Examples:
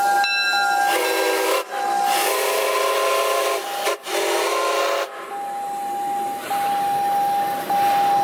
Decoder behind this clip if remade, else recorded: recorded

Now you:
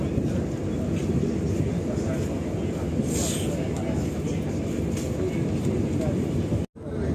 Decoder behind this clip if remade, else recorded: recorded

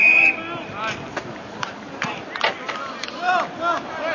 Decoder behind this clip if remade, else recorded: recorded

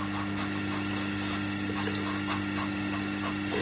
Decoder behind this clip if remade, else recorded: recorded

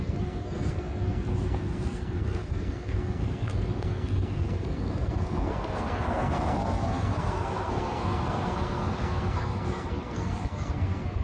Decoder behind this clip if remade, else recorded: remade, codec, SNAC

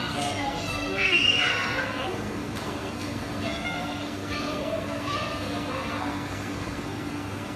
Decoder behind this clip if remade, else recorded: remade, codec, SNAC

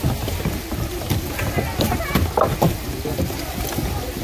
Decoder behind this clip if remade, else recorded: recorded